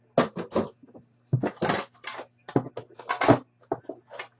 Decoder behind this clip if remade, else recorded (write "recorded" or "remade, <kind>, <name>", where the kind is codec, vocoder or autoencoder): recorded